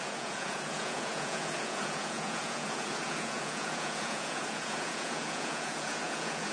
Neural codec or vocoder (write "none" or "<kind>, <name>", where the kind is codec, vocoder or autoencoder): vocoder, Vocos